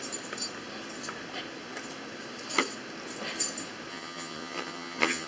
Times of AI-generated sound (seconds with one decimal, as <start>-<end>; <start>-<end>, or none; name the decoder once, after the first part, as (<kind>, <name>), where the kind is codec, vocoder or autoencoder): 3.9-5.3 (vocoder, HiFi-GAN)